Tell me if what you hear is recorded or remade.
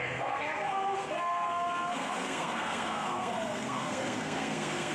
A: remade